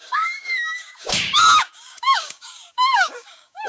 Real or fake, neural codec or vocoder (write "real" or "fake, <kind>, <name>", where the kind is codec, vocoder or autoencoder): fake, codec, DAC